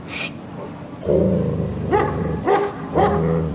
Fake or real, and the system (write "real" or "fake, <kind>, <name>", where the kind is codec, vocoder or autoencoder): real